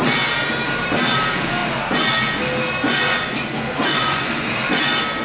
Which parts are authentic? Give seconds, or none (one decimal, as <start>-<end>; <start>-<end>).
0.0-2.8; 4.4-5.2